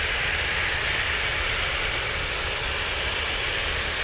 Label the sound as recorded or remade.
recorded